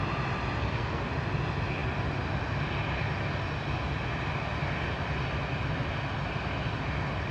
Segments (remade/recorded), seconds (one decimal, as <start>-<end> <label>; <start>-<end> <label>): 0.0-0.6 recorded; 0.6-1.1 remade; 1.1-7.3 recorded